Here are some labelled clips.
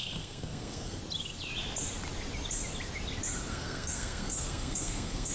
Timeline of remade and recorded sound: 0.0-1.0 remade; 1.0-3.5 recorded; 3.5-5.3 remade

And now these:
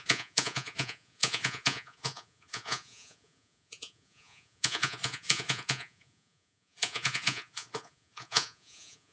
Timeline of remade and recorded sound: 0.0-9.1 remade

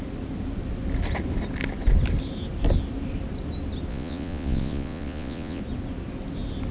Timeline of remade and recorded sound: 0.0-3.9 recorded; 3.9-5.6 remade; 5.6-6.7 recorded

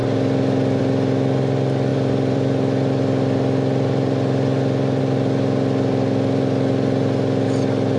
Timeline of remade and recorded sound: 0.0-1.9 recorded; 1.9-5.0 remade; 5.0-8.0 recorded

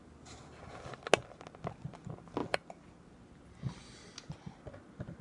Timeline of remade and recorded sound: 0.0-5.2 recorded

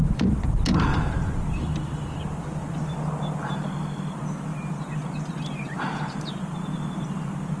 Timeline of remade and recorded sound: 0.0-7.6 recorded